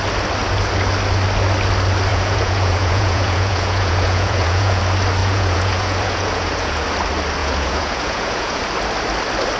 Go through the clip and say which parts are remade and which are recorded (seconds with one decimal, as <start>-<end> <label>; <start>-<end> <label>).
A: 0.0-2.1 recorded; 2.1-4.8 remade; 4.8-5.2 recorded; 5.2-6.8 remade; 6.8-7.4 recorded; 7.4-8.6 remade; 8.6-9.6 recorded